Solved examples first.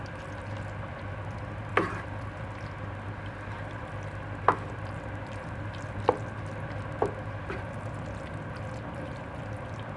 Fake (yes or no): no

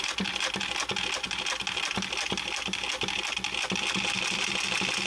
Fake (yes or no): no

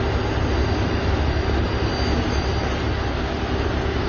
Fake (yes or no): no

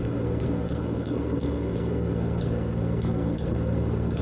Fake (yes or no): yes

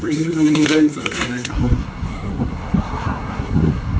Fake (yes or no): yes